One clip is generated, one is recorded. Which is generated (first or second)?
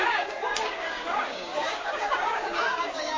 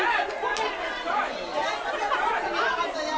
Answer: first